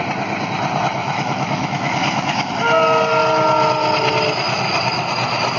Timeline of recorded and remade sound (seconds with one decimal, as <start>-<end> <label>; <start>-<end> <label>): 0.0-1.0 recorded; 1.0-2.5 remade; 2.5-5.6 recorded